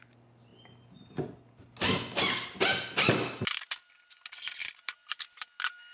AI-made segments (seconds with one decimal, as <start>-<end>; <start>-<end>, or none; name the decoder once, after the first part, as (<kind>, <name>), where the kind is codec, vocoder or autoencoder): none